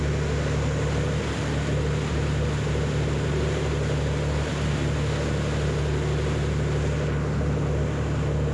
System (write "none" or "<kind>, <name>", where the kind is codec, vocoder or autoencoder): none